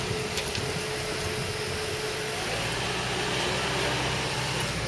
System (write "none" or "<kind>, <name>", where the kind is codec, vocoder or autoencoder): none